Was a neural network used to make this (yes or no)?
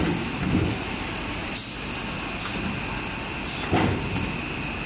yes